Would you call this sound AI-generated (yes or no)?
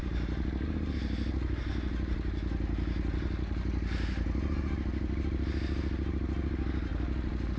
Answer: no